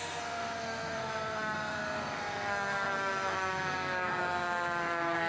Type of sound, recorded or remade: remade